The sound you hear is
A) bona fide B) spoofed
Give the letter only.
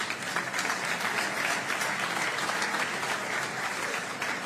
A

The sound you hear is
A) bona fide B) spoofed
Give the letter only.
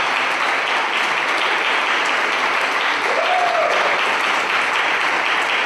A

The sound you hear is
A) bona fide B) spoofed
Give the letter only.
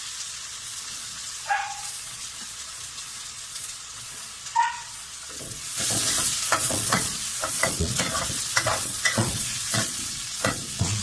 B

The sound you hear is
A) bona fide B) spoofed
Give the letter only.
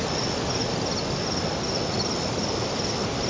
A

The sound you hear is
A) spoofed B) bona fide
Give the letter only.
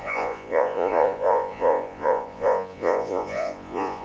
A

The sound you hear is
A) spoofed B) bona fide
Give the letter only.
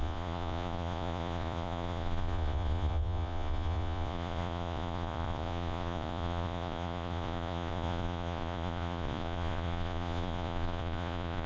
A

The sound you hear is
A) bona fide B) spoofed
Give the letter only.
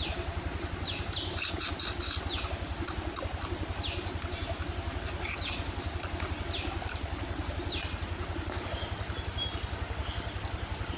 A